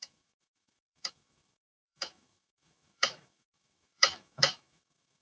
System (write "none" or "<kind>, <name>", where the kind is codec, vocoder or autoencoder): autoencoder, DAC-VAE